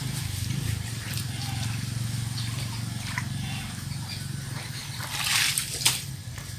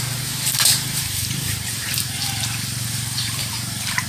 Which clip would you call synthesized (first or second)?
second